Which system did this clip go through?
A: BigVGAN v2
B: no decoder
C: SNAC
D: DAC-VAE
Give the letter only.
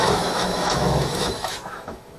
D